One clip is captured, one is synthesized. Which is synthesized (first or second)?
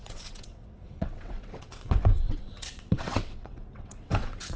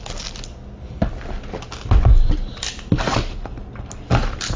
first